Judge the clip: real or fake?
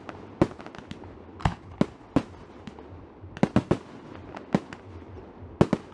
real